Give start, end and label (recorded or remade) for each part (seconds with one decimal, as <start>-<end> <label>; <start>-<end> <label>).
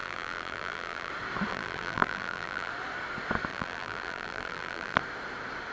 0.0-1.1 remade; 1.1-1.5 recorded; 1.5-2.7 remade; 2.7-3.5 recorded; 3.5-5.0 remade; 5.0-5.7 recorded